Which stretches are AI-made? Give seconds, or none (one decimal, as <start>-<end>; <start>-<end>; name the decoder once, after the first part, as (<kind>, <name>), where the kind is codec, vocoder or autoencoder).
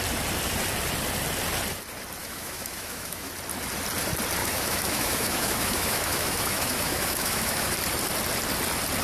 2.2-3.3 (autoencoder, DAC-VAE); 4.4-7.7